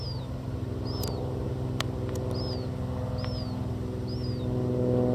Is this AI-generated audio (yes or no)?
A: no